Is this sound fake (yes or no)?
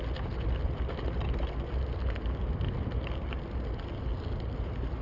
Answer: no